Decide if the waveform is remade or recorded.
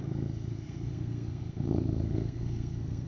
remade